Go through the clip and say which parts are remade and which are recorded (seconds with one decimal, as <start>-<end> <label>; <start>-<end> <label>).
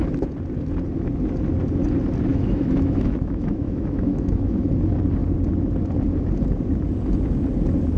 0.0-2.3 recorded; 2.3-4.7 remade; 4.7-8.0 recorded